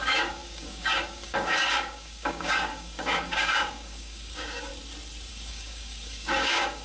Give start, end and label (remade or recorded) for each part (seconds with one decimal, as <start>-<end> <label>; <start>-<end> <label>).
0.0-4.7 remade; 4.7-5.3 recorded; 5.3-6.8 remade